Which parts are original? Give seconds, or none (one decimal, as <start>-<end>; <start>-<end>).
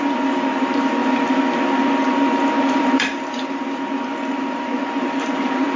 1.0-2.6; 3.6-4.3